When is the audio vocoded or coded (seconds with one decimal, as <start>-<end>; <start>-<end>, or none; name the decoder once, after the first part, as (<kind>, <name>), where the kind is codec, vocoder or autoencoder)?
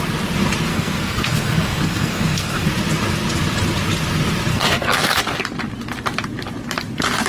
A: 0.7-2.7 (codec, SNAC); 4.5-5.2